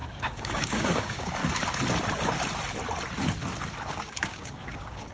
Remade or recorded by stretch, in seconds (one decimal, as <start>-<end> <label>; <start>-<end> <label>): 0.0-1.4 remade; 1.4-3.9 recorded; 3.9-5.1 remade